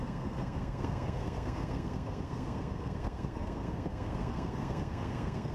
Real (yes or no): no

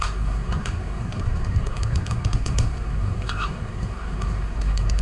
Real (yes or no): no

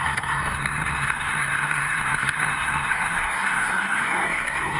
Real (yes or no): no